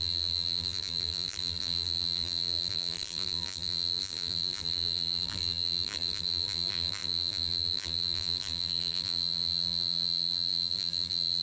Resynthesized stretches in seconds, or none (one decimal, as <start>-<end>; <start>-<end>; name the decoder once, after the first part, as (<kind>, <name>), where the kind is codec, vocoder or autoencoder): 0.0-11.4 (vocoder, BigVGAN v2)